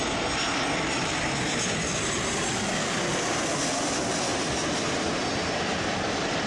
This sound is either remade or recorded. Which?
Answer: recorded